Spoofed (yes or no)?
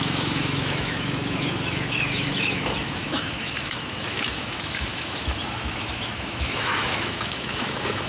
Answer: yes